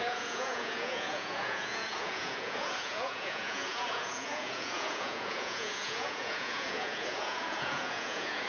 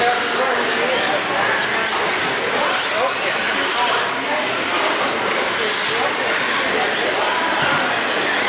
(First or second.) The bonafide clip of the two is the second